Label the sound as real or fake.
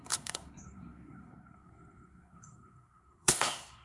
fake